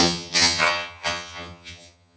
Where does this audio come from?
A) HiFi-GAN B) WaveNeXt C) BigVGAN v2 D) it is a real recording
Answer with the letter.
A